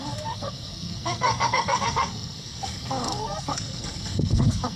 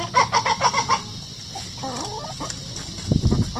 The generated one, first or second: first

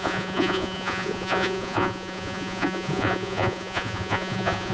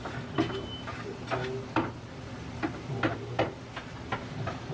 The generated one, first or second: first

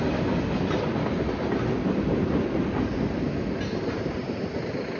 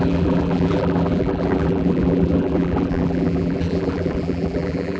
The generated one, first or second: second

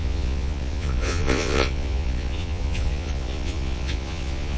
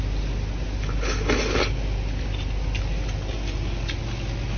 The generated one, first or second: first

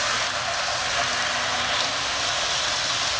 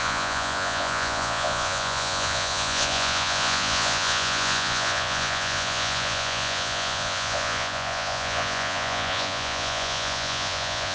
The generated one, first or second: second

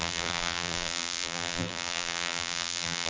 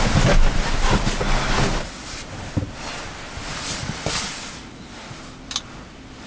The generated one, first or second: first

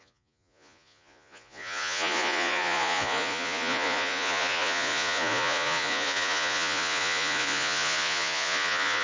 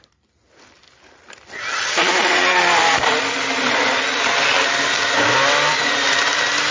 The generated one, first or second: first